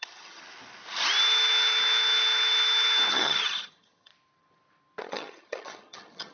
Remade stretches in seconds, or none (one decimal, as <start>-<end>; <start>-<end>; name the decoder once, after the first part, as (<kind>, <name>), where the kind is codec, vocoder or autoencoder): 0.0-0.4 (vocoder, HiFi-GAN); 3.1-4.1; 5.0-6.3

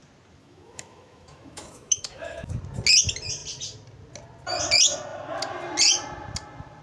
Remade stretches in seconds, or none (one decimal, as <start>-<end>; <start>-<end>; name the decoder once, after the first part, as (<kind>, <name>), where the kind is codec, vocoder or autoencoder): 0.4-2.5 (autoencoder, DAC-VAE)